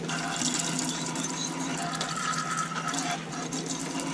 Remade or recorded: recorded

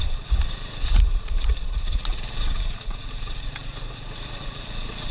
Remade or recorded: remade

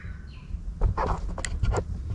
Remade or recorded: recorded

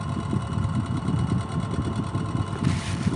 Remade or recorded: recorded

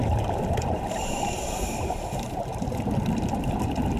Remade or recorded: remade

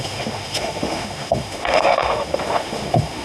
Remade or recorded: remade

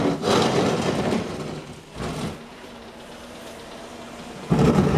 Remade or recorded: recorded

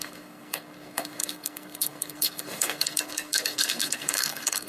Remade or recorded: remade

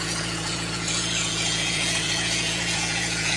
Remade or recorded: remade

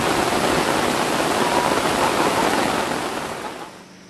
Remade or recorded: recorded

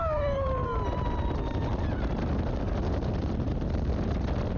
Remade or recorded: recorded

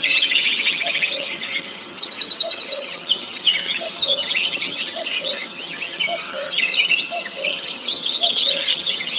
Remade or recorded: remade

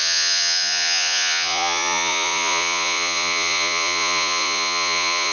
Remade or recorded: remade